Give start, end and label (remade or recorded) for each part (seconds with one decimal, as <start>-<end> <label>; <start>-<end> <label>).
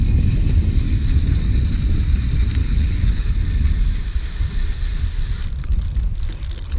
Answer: 0.0-2.6 recorded; 2.6-3.3 remade; 3.3-6.8 recorded